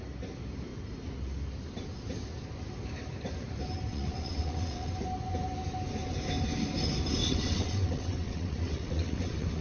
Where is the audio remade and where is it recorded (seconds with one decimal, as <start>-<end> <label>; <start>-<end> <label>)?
0.0-3.9 recorded; 3.9-4.9 remade; 4.9-7.2 recorded; 7.2-9.6 remade